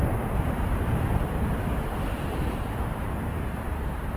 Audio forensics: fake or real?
fake